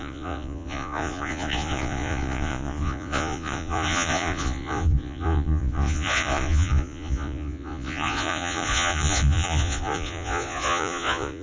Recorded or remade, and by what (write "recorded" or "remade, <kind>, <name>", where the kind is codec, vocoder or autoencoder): remade, vocoder, Vocos